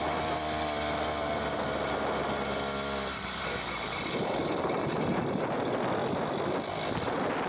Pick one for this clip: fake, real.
real